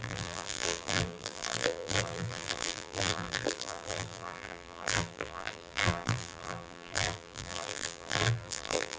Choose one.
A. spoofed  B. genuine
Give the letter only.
A